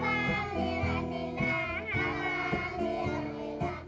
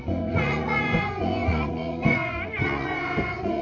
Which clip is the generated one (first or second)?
second